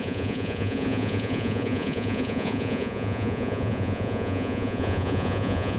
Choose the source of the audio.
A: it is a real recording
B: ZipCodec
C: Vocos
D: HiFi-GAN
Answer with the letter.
C